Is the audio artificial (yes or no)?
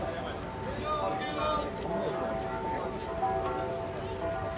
no